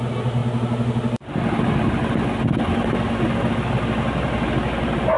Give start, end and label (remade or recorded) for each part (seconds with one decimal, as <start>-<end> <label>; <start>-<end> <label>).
0.0-5.2 recorded